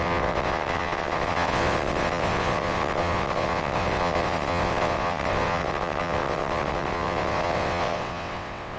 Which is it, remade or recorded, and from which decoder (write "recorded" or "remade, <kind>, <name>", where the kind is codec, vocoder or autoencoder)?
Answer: remade, vocoder, WaveNeXt